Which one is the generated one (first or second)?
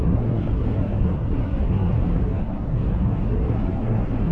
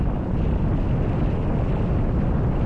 first